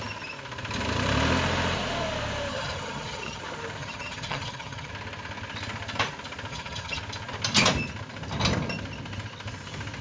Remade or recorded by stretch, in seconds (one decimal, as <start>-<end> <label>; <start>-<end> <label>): 0.0-2.5 recorded; 2.5-3.4 remade; 3.4-3.8 recorded; 3.8-4.9 remade; 4.9-6.5 recorded; 6.5-7.0 remade; 7.0-10.0 recorded